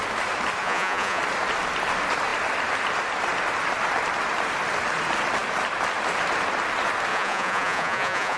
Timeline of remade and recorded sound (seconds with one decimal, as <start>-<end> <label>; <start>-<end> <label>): 0.0-0.6 recorded; 0.6-1.2 remade; 1.2-7.1 recorded; 7.1-8.4 remade